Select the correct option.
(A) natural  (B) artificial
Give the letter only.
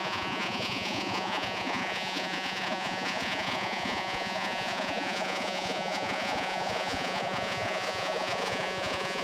B